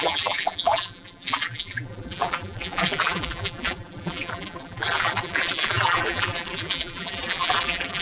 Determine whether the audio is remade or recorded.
remade